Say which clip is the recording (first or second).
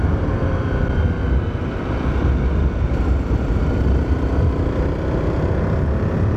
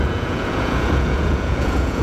first